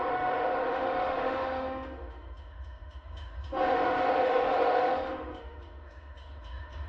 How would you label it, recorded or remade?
remade